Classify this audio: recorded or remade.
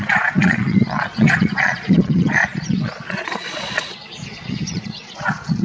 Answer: remade